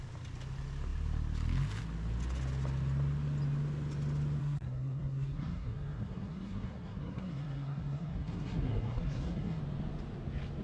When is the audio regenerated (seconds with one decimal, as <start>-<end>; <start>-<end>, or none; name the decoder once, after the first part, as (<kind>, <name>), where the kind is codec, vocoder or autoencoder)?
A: 4.4-9.6 (codec, SNAC)